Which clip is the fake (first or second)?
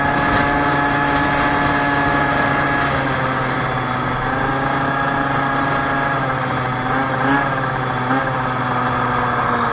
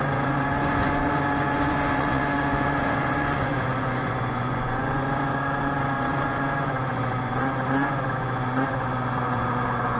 second